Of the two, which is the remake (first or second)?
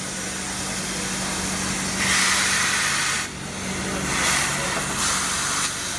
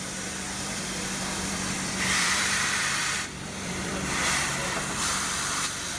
second